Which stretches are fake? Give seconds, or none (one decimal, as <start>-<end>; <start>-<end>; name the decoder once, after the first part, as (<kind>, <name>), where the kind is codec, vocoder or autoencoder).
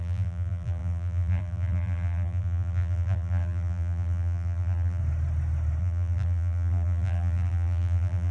0.0-5.0 (vocoder, BigVGAN v2); 5.8-8.3